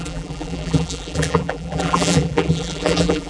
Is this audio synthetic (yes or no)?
yes